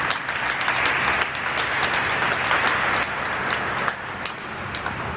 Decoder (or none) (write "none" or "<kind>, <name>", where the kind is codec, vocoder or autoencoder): none